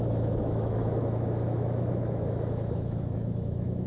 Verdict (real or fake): fake